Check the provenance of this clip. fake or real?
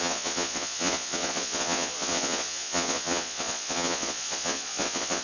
fake